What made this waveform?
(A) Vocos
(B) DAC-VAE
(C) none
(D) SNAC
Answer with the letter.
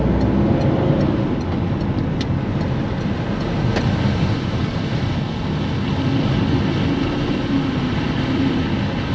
C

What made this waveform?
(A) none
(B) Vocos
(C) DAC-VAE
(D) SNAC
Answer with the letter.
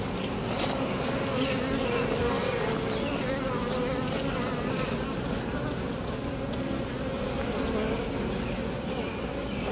A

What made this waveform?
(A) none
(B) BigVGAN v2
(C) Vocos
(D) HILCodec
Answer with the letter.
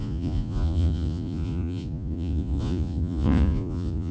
C